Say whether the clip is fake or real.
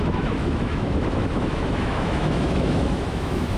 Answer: fake